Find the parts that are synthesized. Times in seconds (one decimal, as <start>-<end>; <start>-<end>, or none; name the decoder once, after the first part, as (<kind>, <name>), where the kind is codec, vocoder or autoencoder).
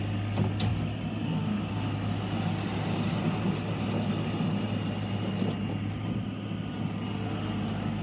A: none